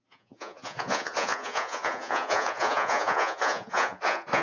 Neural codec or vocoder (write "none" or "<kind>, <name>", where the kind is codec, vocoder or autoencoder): vocoder, Vocos